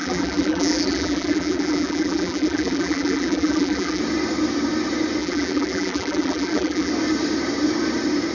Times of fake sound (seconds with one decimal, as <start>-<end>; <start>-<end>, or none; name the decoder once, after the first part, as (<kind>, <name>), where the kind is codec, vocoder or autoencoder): 0.0-4.0 (vocoder, BigVGAN v2); 5.2-6.9